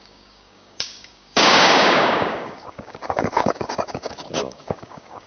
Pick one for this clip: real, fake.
fake